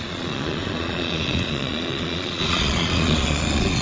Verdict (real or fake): fake